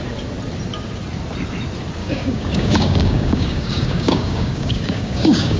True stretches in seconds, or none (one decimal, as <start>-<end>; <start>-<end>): 0.0-2.0